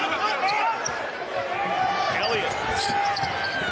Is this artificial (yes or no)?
no